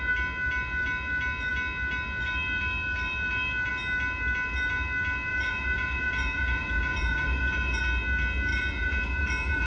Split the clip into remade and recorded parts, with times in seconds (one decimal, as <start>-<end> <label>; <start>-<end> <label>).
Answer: 0.0-5.3 recorded; 5.3-7.8 remade; 7.8-8.5 recorded; 8.5-9.7 remade